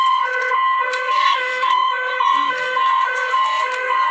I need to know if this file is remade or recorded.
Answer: remade